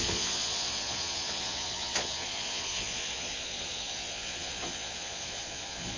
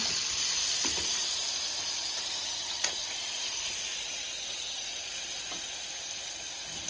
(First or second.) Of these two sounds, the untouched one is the second